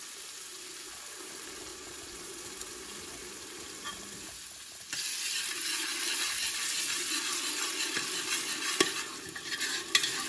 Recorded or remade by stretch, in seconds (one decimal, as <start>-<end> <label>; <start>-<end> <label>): 0.0-1.7 recorded; 1.7-2.4 remade; 2.4-10.3 recorded